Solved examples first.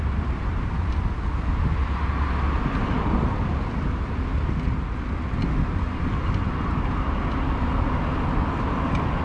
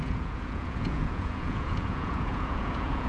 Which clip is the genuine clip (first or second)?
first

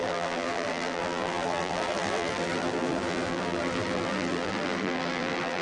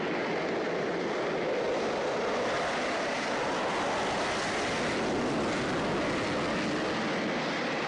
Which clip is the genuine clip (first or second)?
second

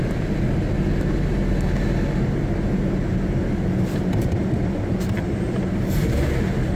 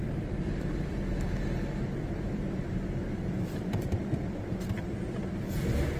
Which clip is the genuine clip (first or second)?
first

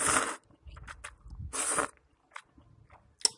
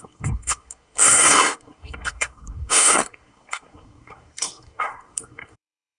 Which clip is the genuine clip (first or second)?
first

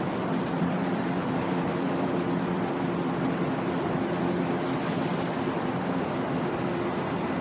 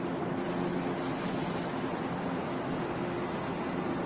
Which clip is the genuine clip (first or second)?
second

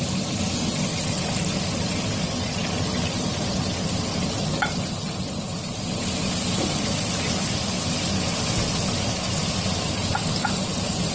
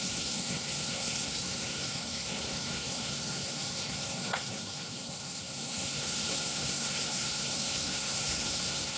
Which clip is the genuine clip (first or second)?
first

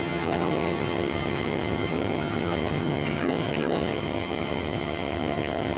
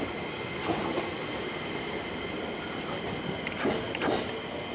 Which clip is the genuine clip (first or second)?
second